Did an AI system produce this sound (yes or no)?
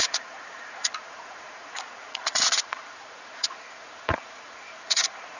yes